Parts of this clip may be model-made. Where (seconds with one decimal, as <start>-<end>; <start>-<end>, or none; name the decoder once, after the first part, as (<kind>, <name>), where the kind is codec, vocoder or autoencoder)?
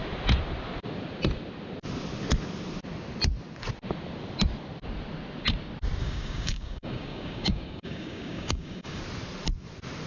6.0-9.0 (codec, DAC)